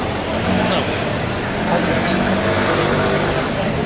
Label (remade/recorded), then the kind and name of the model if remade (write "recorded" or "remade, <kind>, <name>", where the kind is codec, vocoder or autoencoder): recorded